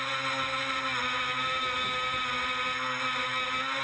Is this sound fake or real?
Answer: real